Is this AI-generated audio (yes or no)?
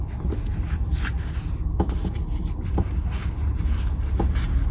no